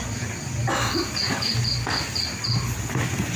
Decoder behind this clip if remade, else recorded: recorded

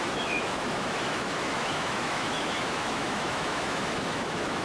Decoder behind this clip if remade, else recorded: remade, autoencoder, DAC-VAE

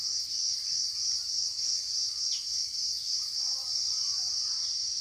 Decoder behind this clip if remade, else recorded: recorded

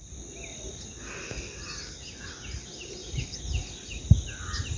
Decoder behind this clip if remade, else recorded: recorded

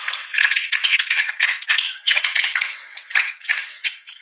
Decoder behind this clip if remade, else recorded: remade, vocoder, WaveNeXt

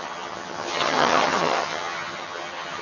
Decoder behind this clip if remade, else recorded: remade, vocoder, HiFi-GAN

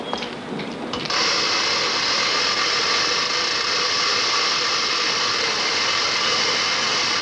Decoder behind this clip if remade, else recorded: recorded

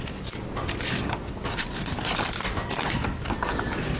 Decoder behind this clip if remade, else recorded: recorded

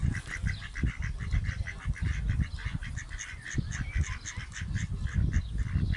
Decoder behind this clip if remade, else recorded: recorded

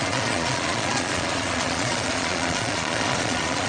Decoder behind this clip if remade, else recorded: remade, vocoder, Vocos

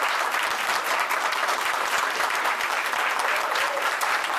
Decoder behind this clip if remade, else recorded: remade, vocoder, BigVGAN v2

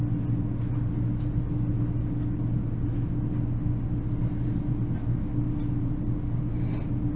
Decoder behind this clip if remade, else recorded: recorded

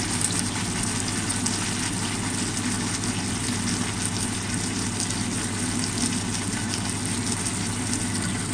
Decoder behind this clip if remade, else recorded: recorded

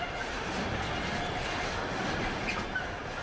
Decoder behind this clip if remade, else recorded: recorded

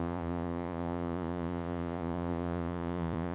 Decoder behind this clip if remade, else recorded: remade, vocoder, Vocos